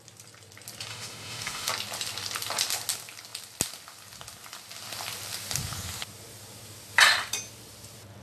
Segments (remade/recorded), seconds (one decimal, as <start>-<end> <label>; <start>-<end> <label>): 0.0-0.9 recorded; 0.9-1.7 remade; 1.7-8.2 recorded